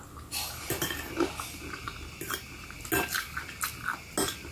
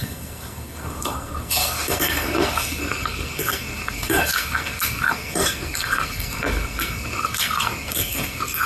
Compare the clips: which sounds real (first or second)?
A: first